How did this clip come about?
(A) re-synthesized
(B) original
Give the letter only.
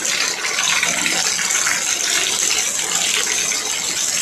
B